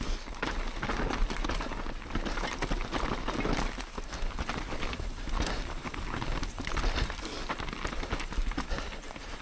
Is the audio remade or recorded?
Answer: recorded